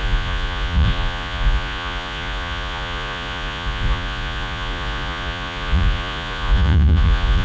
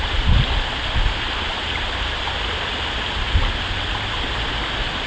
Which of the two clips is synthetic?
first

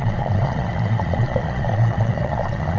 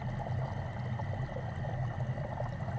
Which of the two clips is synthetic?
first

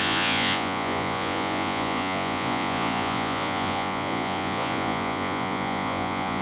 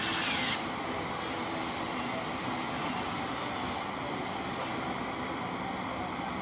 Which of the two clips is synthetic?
first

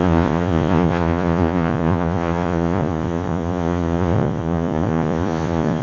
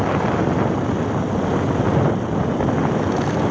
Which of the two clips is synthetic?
first